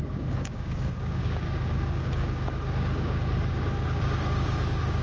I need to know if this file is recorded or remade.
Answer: remade